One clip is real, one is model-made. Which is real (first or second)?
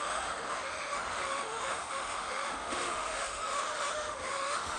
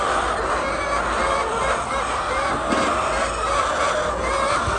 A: second